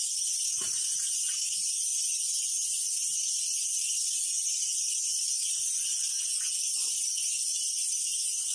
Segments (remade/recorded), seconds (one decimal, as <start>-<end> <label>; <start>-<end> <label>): 0.0-8.5 recorded